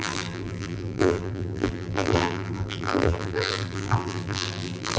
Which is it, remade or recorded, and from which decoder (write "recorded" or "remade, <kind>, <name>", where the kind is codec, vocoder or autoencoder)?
remade, vocoder, BigVGAN v2